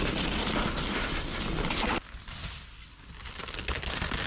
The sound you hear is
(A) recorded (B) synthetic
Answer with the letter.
A